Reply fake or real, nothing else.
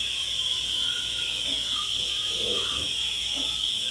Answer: fake